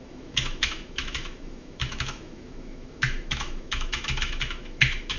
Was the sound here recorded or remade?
remade